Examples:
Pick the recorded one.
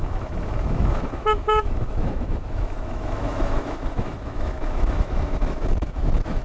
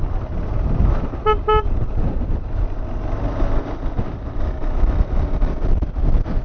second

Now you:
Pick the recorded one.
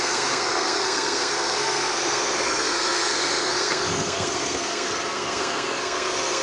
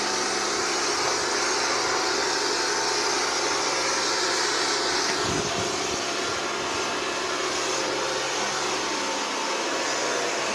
second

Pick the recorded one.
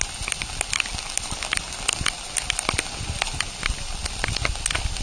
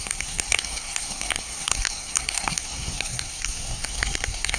first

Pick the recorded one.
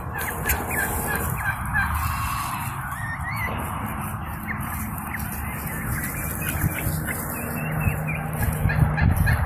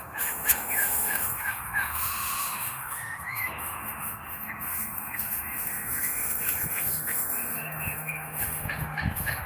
first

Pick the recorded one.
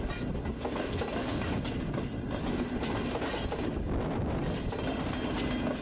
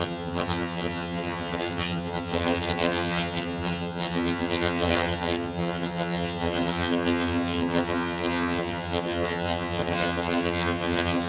first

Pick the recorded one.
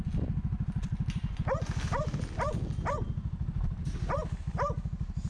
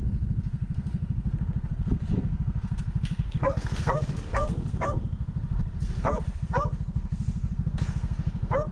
first